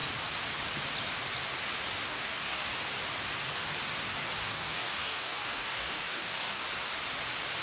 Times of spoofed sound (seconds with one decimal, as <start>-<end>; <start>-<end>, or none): 2.1-2.7; 4.4-6.6